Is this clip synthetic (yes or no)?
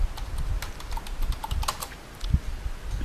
no